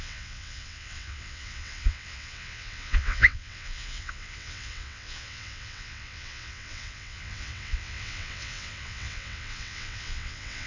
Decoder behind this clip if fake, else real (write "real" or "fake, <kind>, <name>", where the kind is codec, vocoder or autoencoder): fake, vocoder, WaveNeXt